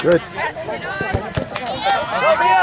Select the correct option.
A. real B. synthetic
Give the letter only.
A